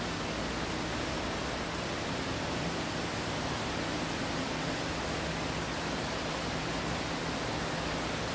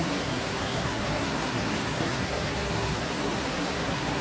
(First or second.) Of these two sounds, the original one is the first